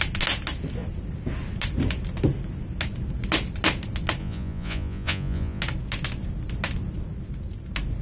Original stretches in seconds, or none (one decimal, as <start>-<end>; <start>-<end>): 0.0-4.2; 5.6-8.0